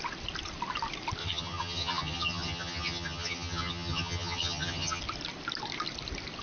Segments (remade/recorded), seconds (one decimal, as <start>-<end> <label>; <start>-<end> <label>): 0.0-1.2 recorded; 1.2-5.0 remade; 5.0-6.4 recorded